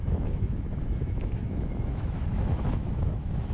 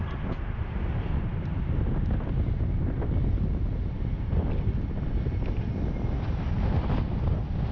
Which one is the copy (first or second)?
first